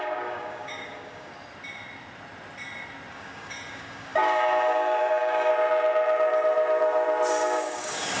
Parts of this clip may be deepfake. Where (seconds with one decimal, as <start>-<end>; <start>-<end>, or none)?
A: 0.0-1.3; 3.1-5.5; 7.3-8.2